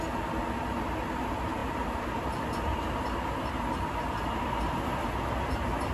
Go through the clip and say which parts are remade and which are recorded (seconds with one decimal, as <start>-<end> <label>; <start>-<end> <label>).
0.0-5.9 recorded